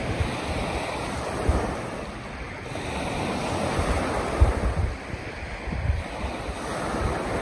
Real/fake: fake